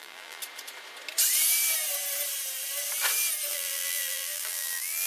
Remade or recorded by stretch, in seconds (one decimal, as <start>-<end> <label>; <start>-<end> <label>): 0.0-0.4 remade; 0.4-3.5 recorded; 3.5-5.1 remade